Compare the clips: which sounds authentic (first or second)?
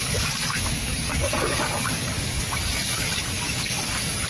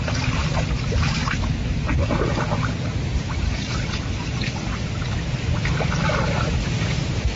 second